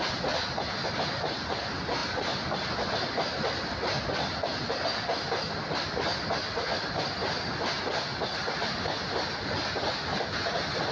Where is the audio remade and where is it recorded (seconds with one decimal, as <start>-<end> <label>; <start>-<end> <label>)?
0.0-10.9 recorded